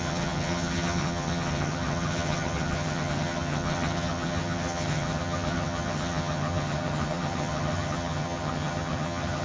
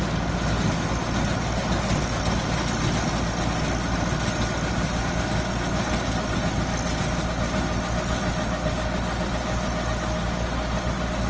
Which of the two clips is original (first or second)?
second